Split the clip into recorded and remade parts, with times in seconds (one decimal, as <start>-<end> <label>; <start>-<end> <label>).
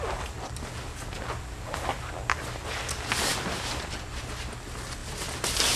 0.0-3.3 recorded; 3.3-4.2 remade; 4.2-5.0 recorded; 5.0-5.8 remade